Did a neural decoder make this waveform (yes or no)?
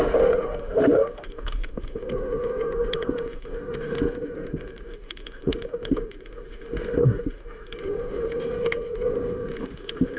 yes